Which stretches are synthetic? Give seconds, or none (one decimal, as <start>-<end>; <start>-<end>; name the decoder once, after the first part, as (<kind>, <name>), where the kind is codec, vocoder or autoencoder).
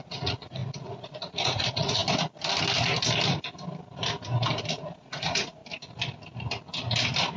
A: 0.0-2.0 (vocoder, Vocos); 4.7-5.6